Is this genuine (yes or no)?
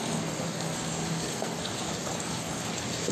no